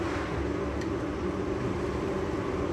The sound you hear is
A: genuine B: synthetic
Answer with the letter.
A